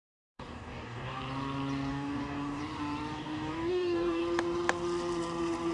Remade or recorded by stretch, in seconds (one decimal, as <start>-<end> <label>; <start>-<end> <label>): 0.0-1.2 remade; 1.2-1.9 recorded; 1.9-2.6 remade; 2.6-3.1 recorded; 3.1-4.2 remade; 4.2-5.7 recorded